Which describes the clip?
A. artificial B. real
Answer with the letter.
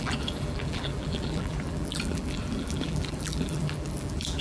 A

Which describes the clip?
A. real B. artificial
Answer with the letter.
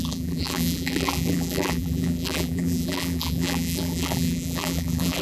B